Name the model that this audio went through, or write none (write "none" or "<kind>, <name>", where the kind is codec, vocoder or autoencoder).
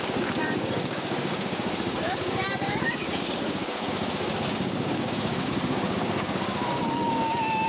codec, DAC